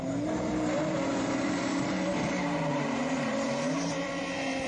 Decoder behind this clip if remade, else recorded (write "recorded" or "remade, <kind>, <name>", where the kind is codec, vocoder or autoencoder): remade, vocoder, BigVGAN v2